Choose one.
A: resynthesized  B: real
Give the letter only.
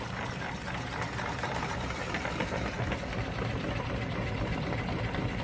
A